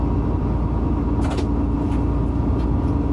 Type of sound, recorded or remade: recorded